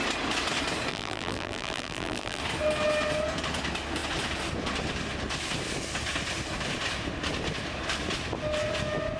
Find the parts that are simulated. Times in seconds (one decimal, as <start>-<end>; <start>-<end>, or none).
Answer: 0.9-2.4